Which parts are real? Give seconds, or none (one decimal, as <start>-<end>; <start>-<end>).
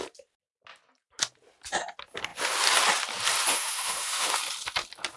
0.0-3.5; 4.4-5.2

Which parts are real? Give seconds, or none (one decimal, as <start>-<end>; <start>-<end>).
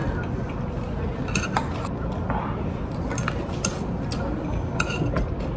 0.0-5.6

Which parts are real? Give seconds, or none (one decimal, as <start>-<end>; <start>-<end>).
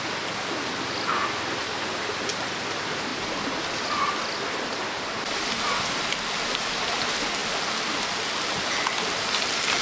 0.0-9.8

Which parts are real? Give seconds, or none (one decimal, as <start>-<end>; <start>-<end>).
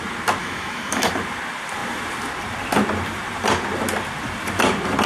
0.0-0.4; 1.1-5.1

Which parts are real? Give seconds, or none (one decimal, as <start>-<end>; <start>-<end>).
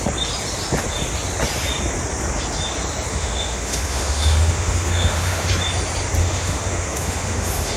0.0-3.1; 5.5-6.2